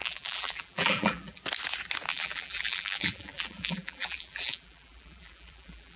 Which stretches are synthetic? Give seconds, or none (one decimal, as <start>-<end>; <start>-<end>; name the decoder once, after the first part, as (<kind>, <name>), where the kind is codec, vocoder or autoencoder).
0.0-1.4 (vocoder, BigVGAN v2); 2.1-6.0

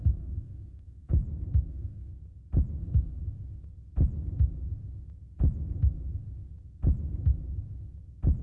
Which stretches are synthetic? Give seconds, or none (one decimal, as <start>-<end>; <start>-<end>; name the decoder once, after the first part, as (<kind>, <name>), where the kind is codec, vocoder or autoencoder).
0.0-1.2 (codec, SNAC); 1.7-2.1; 2.8-3.2

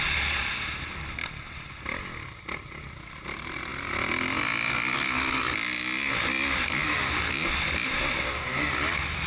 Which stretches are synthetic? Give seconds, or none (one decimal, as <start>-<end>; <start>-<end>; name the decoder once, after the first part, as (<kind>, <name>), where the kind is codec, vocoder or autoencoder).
none

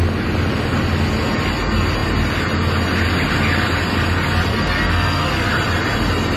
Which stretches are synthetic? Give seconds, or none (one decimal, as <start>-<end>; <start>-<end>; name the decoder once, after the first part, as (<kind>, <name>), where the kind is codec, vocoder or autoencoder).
4.5-5.5 (codec, SNAC)

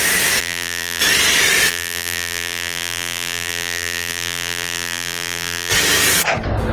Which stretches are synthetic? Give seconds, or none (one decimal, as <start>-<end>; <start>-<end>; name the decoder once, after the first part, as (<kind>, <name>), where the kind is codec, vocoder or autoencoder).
0.4-1.0 (vocoder, BigVGAN v2); 1.7-5.7